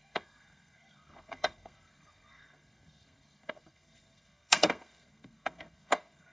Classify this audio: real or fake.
fake